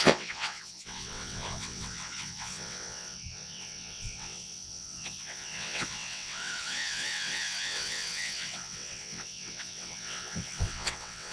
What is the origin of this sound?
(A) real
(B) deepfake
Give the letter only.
B